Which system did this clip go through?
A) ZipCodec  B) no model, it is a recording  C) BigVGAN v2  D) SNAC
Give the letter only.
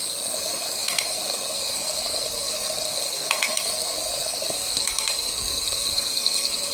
D